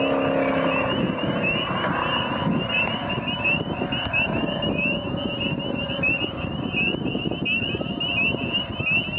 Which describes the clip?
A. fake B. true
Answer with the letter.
B